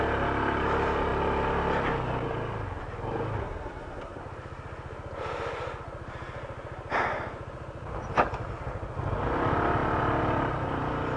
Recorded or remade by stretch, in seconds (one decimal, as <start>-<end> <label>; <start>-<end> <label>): 0.0-3.4 recorded; 3.4-4.2 remade; 4.2-11.2 recorded